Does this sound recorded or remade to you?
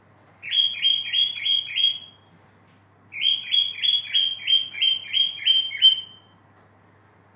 recorded